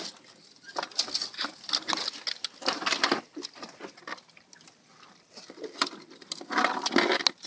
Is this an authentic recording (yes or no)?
yes